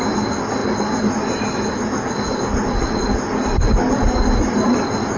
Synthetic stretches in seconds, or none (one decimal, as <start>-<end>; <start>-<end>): none